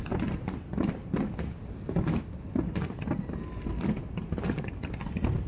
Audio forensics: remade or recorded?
recorded